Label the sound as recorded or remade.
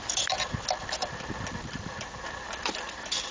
remade